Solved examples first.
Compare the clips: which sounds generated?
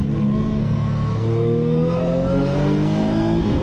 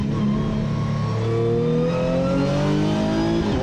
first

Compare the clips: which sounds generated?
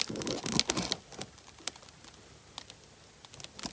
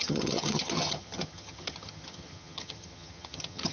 second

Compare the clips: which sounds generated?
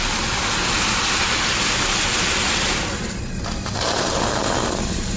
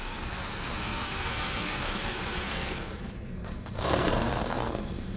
second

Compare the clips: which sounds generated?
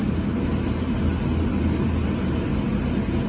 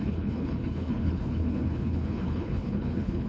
second